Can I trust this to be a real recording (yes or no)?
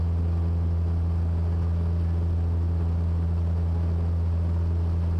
yes